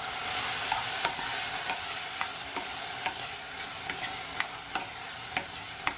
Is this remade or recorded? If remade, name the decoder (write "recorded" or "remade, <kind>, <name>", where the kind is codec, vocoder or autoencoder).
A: recorded